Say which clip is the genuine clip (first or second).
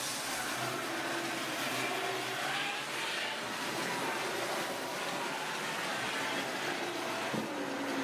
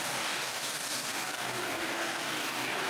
first